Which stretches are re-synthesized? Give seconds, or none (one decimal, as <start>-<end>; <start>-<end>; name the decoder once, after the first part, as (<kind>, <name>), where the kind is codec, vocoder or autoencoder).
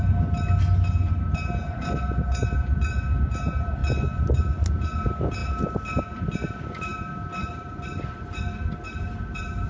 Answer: none